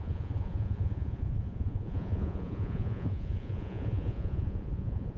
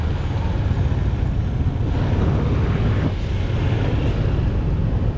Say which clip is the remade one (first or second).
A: first